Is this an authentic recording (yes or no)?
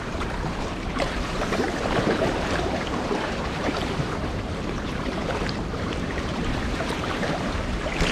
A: no